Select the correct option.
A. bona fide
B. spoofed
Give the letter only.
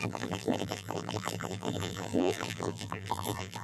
B